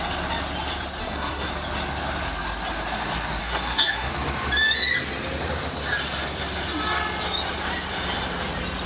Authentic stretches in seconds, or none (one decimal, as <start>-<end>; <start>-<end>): 0.0-1.0; 1.5-3.4; 4.1-8.9